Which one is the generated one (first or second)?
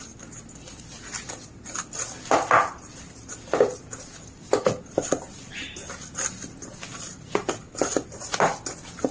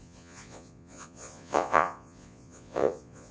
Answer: second